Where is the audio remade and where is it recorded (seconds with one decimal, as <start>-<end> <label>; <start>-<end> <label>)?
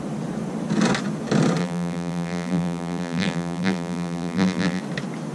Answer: 0.0-1.6 recorded; 1.6-4.8 remade; 4.8-5.3 recorded